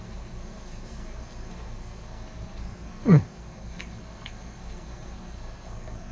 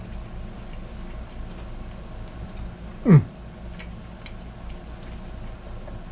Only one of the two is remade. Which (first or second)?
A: first